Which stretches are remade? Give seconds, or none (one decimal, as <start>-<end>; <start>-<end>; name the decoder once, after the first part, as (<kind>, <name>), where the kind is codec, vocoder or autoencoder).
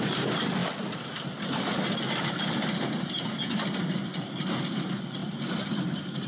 none